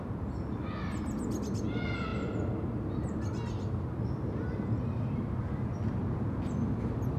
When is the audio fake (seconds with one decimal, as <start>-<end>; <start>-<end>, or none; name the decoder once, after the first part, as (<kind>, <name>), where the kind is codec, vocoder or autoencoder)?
none

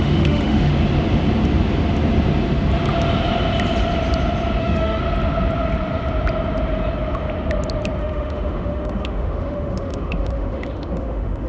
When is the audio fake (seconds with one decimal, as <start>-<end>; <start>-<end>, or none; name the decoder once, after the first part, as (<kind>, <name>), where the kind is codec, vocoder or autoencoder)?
0.0-0.7 (autoencoder, DAC-VAE); 4.6-5.0; 8.0-11.5